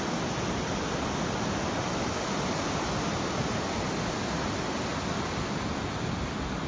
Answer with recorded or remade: recorded